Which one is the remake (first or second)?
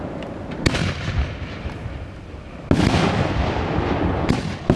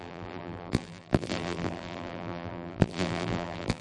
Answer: second